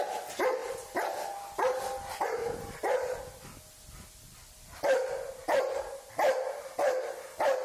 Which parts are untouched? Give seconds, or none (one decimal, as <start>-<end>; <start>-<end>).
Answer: 0.0-0.6; 1.4-2.4; 3.2-5.4; 6.1-7.6